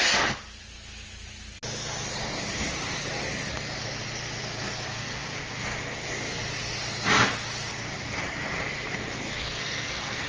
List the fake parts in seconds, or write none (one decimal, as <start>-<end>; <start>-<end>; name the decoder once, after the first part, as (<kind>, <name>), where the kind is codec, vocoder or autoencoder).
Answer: 9.4-10.3 (codec, SNAC)